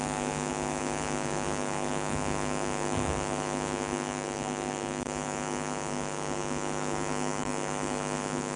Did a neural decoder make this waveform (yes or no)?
yes